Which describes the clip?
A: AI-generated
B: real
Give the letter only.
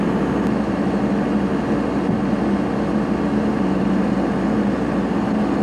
B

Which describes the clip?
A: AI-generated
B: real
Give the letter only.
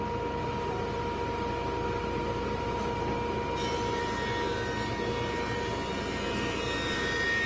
B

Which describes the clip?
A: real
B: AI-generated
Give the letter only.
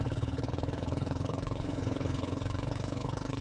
B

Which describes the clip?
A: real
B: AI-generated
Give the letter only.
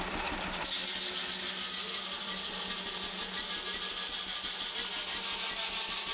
A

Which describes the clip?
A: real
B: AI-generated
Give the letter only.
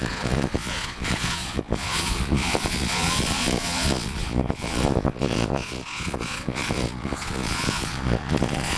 B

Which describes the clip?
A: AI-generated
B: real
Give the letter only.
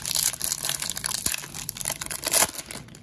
B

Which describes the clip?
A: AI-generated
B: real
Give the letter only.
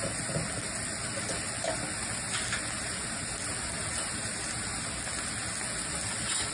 B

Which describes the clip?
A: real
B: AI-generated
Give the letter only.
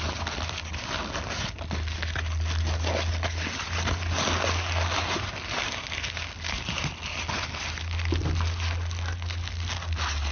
A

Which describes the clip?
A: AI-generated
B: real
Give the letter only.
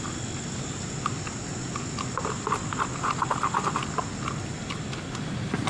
B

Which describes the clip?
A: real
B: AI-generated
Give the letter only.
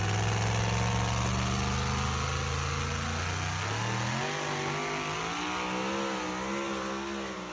A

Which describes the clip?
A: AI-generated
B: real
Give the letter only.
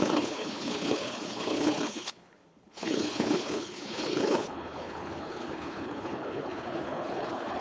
A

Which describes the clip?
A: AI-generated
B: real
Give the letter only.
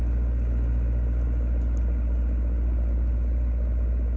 B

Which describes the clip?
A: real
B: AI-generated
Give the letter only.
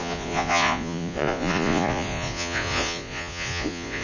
B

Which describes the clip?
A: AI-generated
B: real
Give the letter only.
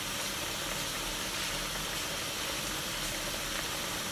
A